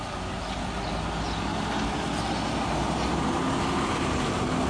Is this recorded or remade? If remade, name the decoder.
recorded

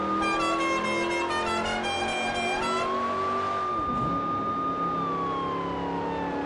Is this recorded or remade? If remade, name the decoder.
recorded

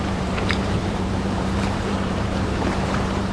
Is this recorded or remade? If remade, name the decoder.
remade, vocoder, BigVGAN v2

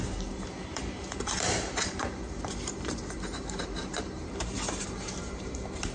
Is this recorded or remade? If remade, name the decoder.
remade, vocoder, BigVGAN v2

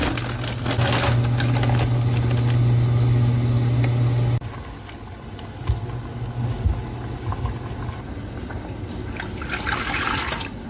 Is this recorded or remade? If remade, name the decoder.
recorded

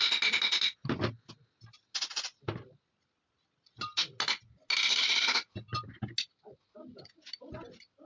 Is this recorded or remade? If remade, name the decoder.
recorded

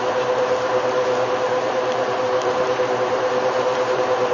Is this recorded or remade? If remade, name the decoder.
remade, vocoder, BigVGAN v2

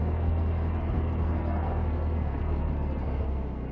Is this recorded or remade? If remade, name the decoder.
remade, codec, SNAC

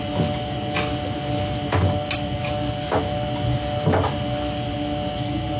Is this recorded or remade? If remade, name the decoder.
recorded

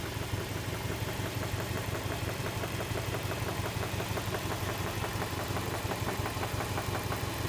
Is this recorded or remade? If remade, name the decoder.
remade, vocoder, BigVGAN v2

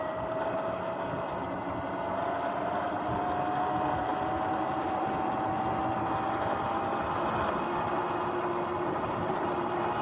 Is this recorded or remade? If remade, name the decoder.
recorded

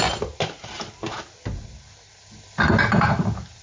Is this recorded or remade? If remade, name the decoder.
recorded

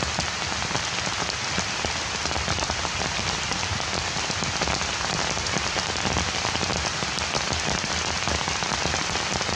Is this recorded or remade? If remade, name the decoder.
recorded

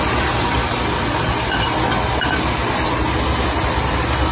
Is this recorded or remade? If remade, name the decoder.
recorded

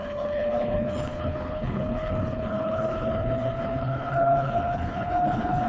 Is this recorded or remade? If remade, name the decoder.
remade, codec, HILCodec